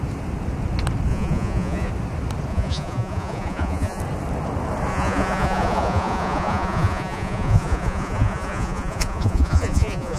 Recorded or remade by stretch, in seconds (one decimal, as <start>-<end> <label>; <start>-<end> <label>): 0.0-1.1 recorded; 1.1-1.9 remade; 1.9-2.5 recorded; 2.5-4.0 remade; 4.0-4.9 recorded; 4.9-10.2 remade